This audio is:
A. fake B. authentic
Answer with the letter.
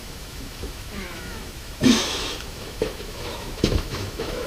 A